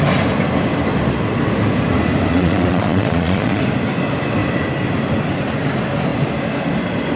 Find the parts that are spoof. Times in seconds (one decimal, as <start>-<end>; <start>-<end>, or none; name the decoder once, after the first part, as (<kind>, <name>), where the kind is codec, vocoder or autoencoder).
2.3-3.6 (vocoder, Vocos)